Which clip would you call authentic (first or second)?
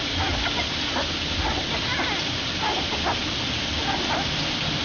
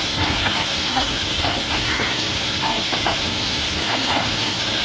first